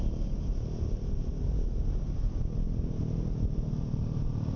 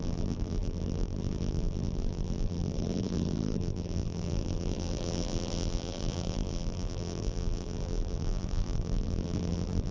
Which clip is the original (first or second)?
first